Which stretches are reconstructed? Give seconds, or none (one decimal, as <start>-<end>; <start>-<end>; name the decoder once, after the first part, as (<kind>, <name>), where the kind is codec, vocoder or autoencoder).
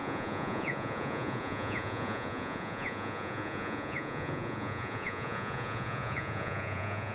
0.0-7.1 (vocoder, Vocos)